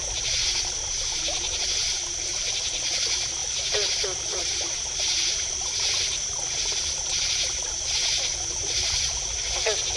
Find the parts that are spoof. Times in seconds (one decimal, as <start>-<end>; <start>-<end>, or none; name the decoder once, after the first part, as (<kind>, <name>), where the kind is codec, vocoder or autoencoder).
none